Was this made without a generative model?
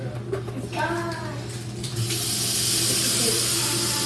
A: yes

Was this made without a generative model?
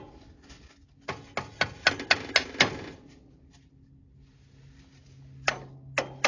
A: yes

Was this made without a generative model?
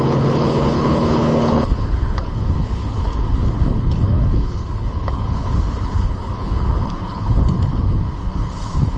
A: no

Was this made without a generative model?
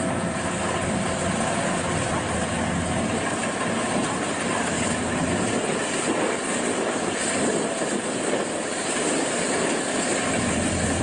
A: yes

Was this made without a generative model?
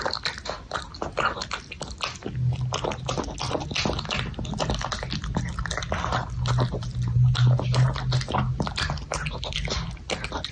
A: yes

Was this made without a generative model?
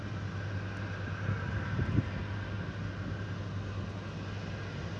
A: yes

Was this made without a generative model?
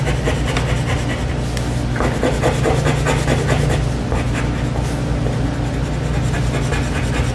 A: yes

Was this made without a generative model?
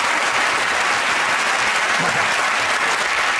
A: yes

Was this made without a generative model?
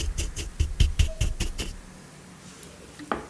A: yes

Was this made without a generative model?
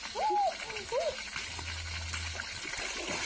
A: yes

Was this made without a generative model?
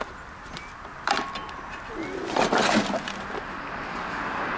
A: yes